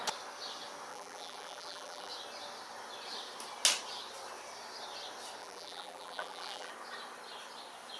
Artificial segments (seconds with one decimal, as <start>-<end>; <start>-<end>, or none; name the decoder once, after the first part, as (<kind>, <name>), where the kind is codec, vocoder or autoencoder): 0.9-2.1 (vocoder, BigVGAN v2); 5.4-6.7